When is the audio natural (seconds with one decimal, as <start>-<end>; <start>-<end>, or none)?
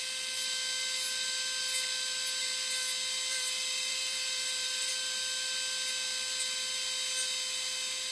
0.0-3.3; 4.9-8.1